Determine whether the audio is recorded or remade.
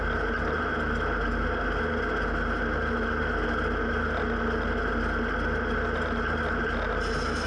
recorded